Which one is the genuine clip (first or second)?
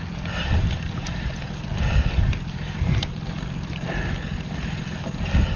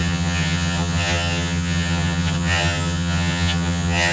first